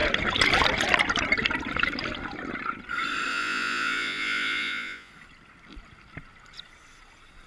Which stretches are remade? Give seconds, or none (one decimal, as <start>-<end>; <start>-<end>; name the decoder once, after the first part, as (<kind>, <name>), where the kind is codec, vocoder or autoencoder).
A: 3.3-5.1 (vocoder, Vocos)